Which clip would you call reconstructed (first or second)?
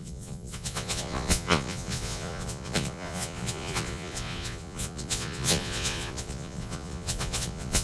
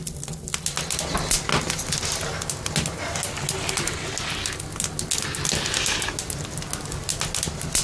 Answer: first